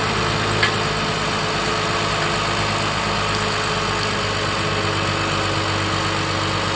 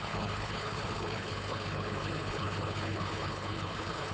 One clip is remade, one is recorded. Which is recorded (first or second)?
first